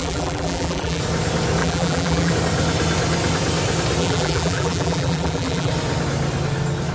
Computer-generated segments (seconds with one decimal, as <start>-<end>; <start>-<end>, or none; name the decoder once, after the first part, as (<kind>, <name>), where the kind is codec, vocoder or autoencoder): 0.0-1.0 (vocoder, BigVGAN v2); 1.6-2.3; 4.0-5.7